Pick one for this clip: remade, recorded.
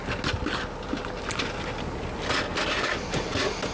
recorded